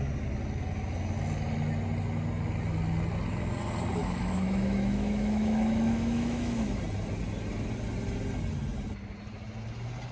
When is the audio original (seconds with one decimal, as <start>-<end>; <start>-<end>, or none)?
0.0-4.0; 6.8-10.1